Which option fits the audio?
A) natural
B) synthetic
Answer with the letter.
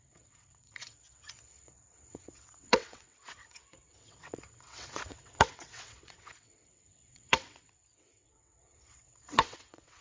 B